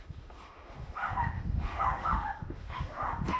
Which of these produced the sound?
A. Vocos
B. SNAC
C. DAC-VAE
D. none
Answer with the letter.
C